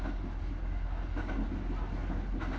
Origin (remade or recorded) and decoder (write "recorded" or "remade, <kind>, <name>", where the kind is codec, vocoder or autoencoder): recorded